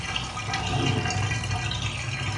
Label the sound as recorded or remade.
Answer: recorded